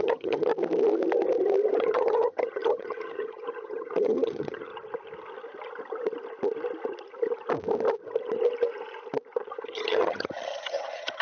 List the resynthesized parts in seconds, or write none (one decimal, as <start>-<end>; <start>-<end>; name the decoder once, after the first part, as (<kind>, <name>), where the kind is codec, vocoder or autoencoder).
0.0-0.5 (vocoder, HiFi-GAN); 1.8-4.7; 9.5-11.2